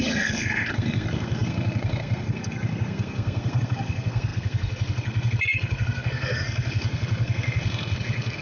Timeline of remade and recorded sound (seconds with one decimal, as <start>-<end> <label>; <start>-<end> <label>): 0.0-8.4 remade